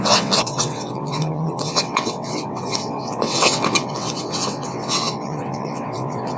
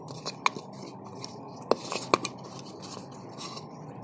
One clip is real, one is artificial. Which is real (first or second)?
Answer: second